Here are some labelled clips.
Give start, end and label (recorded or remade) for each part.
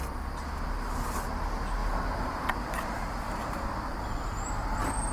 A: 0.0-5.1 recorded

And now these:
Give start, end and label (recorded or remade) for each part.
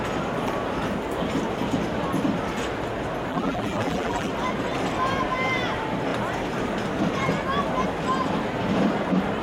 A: 0.0-3.3 recorded; 3.3-4.3 remade; 4.3-9.4 recorded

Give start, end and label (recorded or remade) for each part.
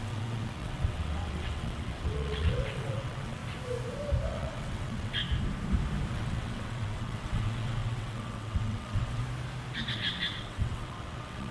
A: 0.0-3.4 remade; 3.4-4.3 recorded; 4.3-5.2 remade; 5.2-6.1 recorded; 6.1-9.2 remade; 9.2-9.9 recorded; 9.9-11.5 remade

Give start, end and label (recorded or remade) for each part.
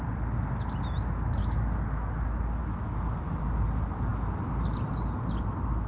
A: 0.0-1.4 recorded; 1.4-2.2 remade; 2.2-2.6 recorded; 2.6-3.2 remade; 3.2-5.9 recorded